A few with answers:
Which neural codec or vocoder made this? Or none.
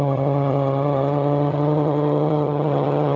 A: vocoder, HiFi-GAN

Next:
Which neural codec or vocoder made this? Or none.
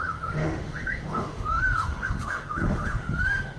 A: autoencoder, DAC-VAE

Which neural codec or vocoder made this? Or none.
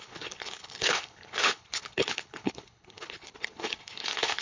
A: codec, HILCodec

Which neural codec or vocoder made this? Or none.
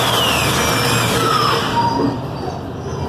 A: none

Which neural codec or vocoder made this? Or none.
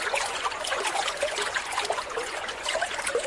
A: vocoder, Vocos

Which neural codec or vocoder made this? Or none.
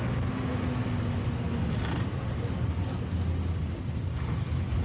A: none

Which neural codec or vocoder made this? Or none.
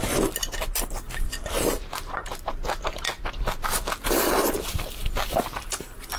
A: none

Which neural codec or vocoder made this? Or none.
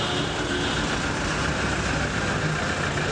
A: none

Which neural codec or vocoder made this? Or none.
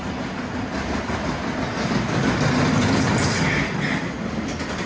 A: none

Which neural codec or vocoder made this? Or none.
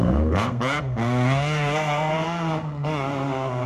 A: codec, SNAC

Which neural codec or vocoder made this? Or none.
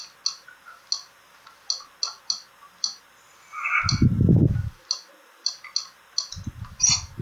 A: none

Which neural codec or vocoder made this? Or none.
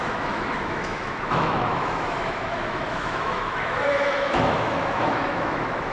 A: autoencoder, DAC-VAE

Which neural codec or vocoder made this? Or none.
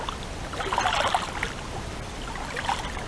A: none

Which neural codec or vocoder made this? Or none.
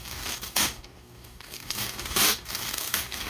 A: codec, DAC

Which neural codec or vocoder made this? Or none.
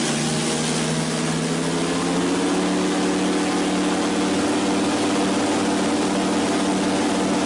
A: none